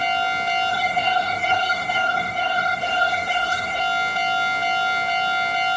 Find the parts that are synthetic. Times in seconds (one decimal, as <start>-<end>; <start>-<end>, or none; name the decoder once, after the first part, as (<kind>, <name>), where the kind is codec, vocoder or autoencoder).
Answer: 0.7-3.8 (codec, SNAC)